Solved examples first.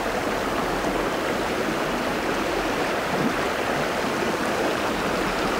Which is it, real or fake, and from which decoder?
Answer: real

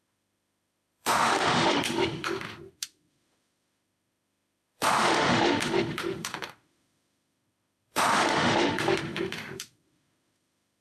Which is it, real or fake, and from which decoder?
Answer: fake, autoencoder, DAC-VAE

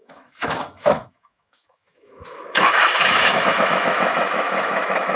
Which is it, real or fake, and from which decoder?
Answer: fake, autoencoder, DAC-VAE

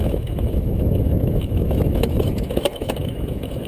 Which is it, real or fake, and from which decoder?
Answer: fake, autoencoder, DAC-VAE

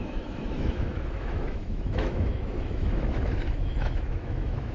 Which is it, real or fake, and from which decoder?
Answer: fake, autoencoder, DAC-VAE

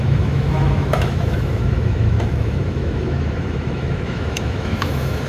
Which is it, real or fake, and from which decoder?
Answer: fake, autoencoder, DAC-VAE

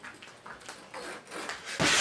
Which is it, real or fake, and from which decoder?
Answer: real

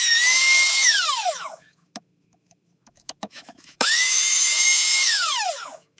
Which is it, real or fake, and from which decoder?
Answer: fake, autoencoder, DAC-VAE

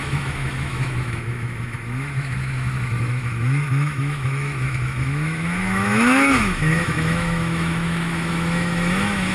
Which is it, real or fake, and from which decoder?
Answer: fake, autoencoder, DAC-VAE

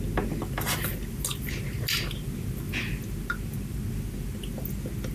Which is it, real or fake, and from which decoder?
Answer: real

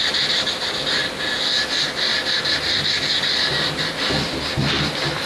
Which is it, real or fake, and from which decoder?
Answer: real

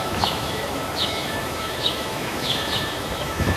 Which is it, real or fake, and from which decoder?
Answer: fake, autoencoder, DAC-VAE